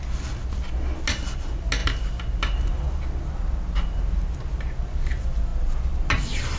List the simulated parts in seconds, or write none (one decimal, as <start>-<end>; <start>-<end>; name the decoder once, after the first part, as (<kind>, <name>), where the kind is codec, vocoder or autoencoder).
none